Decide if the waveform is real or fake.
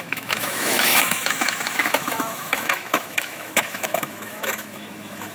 fake